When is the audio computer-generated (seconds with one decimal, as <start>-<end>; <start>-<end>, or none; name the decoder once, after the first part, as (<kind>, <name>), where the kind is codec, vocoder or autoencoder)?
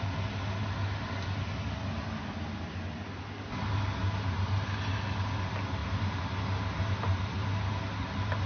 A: none